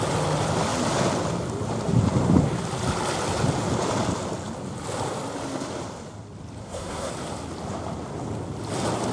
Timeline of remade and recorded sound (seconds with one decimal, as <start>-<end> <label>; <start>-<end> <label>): 0.0-6.6 recorded; 6.6-7.1 remade; 7.1-9.1 recorded